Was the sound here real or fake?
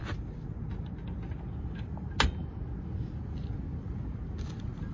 real